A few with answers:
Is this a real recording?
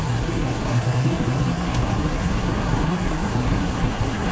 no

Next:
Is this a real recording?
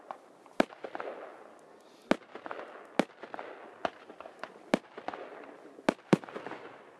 yes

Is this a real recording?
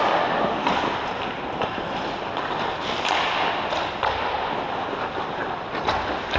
yes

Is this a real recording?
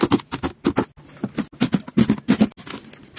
yes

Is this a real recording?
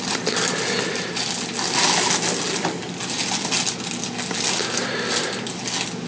yes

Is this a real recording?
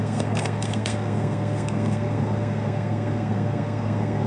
no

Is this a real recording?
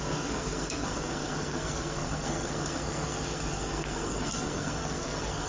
no